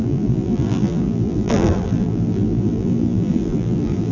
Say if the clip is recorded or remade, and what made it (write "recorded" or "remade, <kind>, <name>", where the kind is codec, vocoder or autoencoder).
remade, vocoder, BigVGAN v2